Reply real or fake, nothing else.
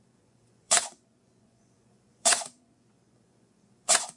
fake